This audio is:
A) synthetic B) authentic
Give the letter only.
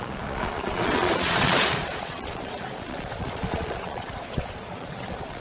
A